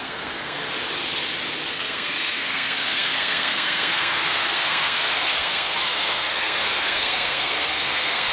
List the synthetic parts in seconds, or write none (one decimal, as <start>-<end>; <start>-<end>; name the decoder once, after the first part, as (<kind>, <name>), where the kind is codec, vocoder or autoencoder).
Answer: 0.0-0.6 (codec, SNAC); 1.7-8.3